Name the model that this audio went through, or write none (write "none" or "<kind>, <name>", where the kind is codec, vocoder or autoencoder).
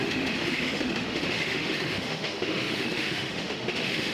autoencoder, DAC-VAE